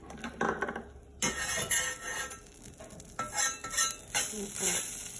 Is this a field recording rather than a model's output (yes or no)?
yes